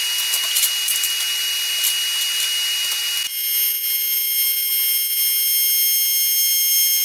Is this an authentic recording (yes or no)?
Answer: yes